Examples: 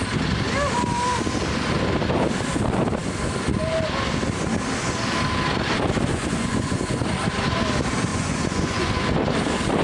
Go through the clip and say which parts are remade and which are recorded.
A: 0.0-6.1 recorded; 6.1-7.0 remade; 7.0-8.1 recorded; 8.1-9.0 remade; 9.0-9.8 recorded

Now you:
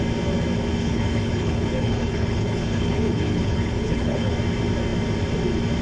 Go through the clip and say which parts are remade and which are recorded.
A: 0.0-0.8 recorded; 0.8-4.3 remade; 4.3-5.8 recorded

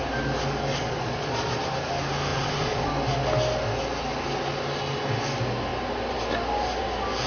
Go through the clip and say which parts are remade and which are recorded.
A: 0.0-0.7 recorded; 0.7-1.6 remade; 1.6-2.3 recorded; 2.3-2.9 remade; 2.9-7.3 recorded

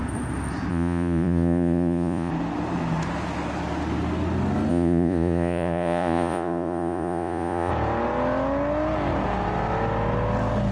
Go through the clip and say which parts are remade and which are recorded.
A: 0.0-0.7 recorded; 0.7-2.3 remade; 2.3-4.7 recorded; 4.7-7.7 remade; 7.7-10.7 recorded

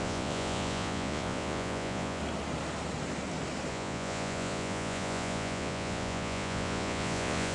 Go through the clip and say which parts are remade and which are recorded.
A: 0.0-2.2 remade; 2.2-3.7 recorded; 3.7-7.5 remade

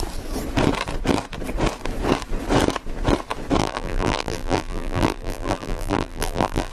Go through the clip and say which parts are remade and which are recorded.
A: 0.0-3.6 recorded; 3.6-6.7 remade

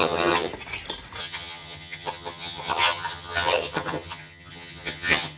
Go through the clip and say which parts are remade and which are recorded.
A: 0.0-0.5 remade; 0.5-1.2 recorded; 1.2-5.4 remade